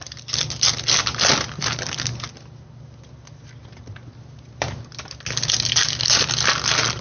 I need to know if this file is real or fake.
real